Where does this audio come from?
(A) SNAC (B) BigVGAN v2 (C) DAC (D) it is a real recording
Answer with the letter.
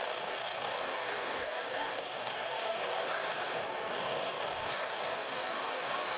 C